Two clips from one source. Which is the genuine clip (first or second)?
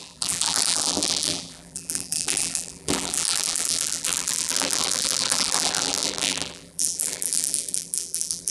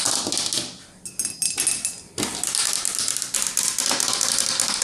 second